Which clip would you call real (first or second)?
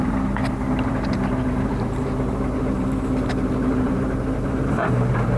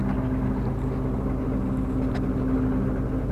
second